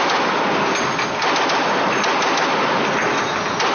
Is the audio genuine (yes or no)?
yes